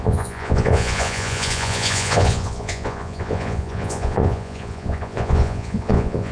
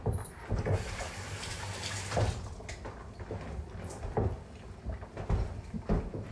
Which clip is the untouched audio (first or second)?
second